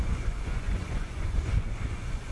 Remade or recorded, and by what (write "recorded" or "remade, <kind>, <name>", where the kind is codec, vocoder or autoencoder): remade, vocoder, Vocos